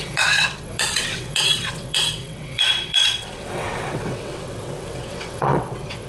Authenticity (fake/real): fake